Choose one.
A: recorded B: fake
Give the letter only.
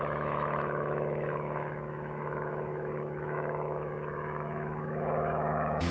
B